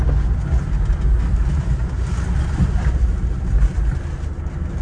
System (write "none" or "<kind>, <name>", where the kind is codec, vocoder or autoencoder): none